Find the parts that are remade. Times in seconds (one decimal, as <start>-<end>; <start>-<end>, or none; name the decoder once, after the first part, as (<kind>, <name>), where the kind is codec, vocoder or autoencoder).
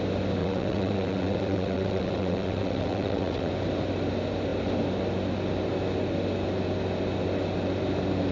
0.4-3.5 (vocoder, WaveNeXt)